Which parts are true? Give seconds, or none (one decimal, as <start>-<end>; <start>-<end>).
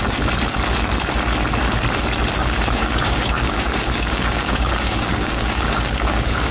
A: 0.0-2.4